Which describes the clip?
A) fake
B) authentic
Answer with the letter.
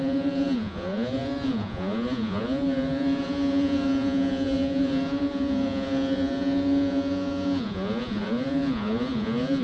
A